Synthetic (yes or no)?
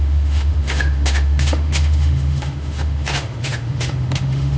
yes